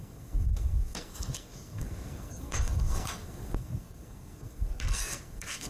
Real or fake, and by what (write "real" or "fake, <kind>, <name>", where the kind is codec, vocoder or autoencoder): fake, codec, SNAC